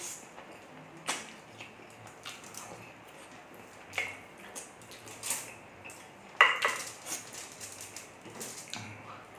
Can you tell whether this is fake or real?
real